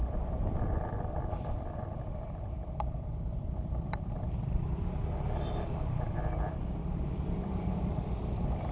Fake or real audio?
fake